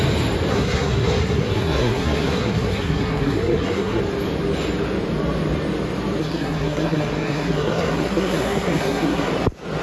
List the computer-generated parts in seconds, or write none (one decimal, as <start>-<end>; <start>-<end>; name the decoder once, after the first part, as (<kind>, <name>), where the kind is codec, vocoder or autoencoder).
0.5-4.0 (codec, SNAC); 6.2-9.3